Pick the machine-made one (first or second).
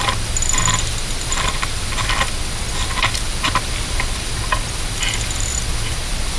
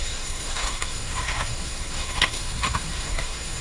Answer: second